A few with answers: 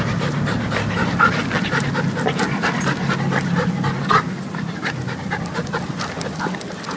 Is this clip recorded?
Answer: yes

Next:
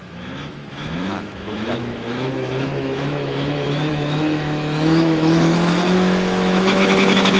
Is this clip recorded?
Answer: no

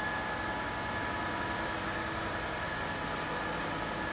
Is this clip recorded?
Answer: yes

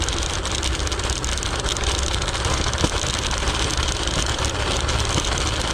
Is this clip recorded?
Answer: yes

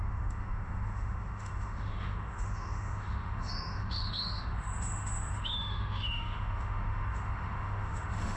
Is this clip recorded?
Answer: no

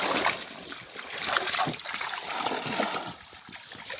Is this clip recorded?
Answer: yes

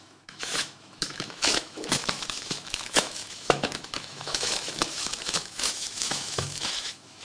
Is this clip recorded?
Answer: no